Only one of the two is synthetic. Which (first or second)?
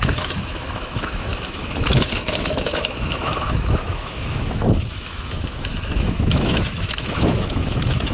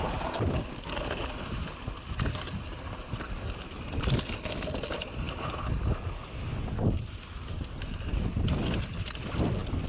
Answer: first